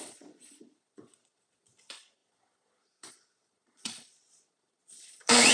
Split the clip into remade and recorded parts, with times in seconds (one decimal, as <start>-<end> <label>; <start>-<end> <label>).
0.0-5.5 remade